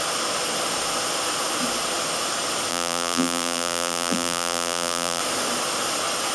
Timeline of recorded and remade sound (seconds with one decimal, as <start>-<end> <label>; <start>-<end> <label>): 0.0-2.7 recorded; 2.7-5.2 remade; 5.2-6.3 recorded